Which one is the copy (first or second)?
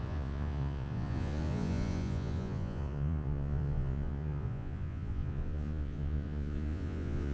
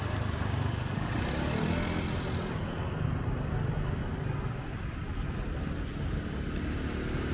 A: first